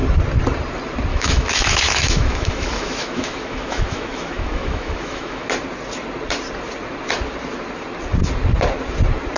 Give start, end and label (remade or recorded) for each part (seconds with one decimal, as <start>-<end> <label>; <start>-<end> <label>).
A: 0.0-1.1 recorded; 1.1-5.5 remade; 5.5-9.4 recorded